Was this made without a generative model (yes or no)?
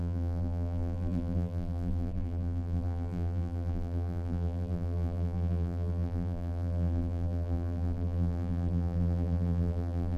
no